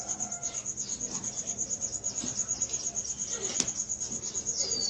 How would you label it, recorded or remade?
recorded